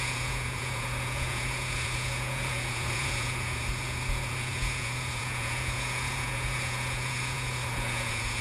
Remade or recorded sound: remade